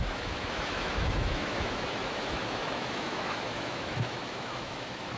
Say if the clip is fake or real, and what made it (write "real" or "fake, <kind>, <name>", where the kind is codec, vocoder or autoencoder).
fake, autoencoder, DAC-VAE